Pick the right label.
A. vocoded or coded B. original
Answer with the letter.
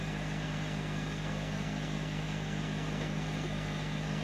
A